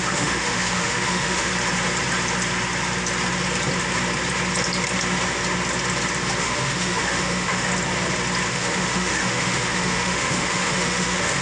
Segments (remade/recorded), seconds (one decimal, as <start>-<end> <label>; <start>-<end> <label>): 0.0-1.5 remade; 1.5-6.4 recorded; 6.4-7.7 remade; 7.7-8.5 recorded; 8.5-11.4 remade